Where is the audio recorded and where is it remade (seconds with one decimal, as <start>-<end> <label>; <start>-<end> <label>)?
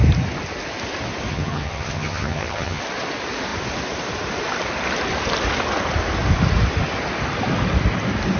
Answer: 0.0-1.3 recorded; 1.3-2.8 remade; 2.8-8.4 recorded